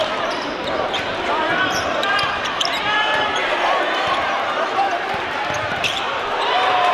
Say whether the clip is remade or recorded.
remade